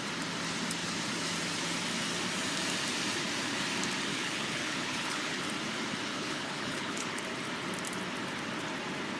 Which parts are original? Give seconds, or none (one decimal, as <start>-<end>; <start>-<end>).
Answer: 0.0-4.1; 5.4-6.1; 7.2-9.2